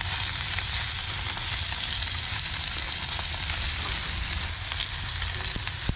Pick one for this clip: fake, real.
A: real